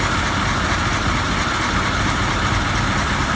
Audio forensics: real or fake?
real